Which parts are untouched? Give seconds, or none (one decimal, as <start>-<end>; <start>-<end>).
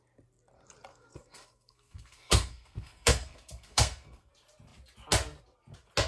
0.0-0.9; 4.3-6.1